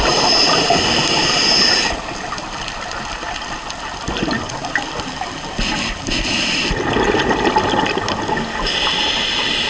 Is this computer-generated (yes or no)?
no